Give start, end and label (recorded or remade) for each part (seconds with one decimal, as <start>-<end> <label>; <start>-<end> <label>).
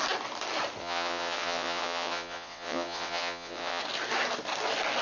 0.0-0.8 recorded; 0.8-3.8 remade; 3.8-5.0 recorded